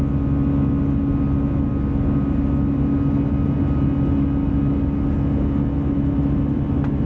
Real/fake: real